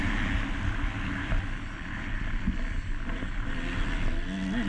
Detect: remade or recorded recorded